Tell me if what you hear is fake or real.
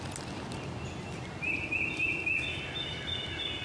real